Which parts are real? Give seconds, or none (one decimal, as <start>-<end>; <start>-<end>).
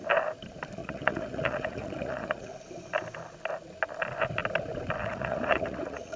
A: 0.0-0.8; 2.5-5.0